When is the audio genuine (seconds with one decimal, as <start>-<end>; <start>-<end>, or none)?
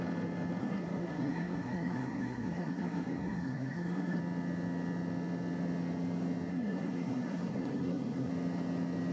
0.0-0.6; 4.2-6.5; 8.3-9.1